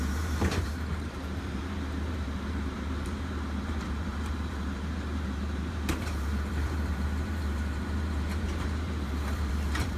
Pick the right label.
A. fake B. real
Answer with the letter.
A